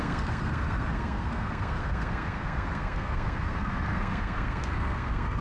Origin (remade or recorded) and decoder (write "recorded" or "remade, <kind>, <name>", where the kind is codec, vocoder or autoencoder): remade, codec, SNAC